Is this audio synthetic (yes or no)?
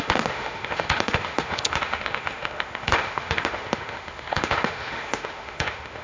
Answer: yes